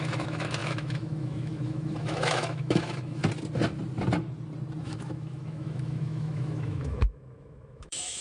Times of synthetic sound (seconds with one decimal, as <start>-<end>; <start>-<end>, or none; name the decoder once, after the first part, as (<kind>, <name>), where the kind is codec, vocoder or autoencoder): 0.0-3.2 (autoencoder, DAC-VAE); 4.8-8.2